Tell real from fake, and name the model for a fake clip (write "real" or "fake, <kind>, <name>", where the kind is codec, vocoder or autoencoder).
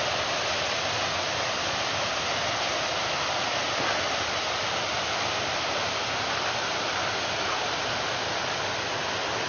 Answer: real